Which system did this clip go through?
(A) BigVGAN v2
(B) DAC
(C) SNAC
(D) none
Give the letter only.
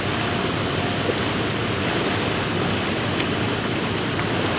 D